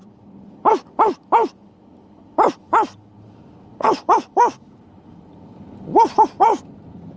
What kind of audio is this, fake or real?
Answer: fake